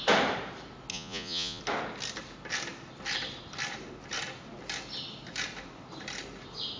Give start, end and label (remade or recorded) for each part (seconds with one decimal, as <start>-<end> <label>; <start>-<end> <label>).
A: 0.0-0.9 recorded; 0.9-1.6 remade; 1.6-6.8 recorded